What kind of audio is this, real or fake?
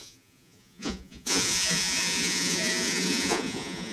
fake